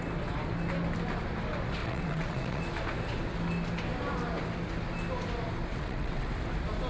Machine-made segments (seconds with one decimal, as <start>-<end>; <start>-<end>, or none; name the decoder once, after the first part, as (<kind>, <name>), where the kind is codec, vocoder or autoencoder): 1.8-2.6 (vocoder, WaveNeXt); 5.7-6.3

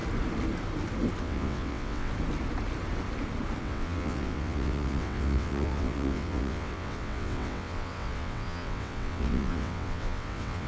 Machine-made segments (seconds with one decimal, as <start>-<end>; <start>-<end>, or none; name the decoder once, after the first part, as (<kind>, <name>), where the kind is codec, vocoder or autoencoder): 1.2-2.1 (vocoder, WaveNeXt); 3.6-10.7

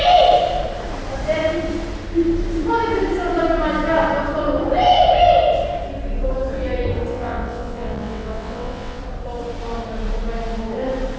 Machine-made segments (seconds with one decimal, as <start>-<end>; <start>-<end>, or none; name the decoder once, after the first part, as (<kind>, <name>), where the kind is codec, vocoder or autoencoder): 7.1-9.0 (vocoder, WaveNeXt)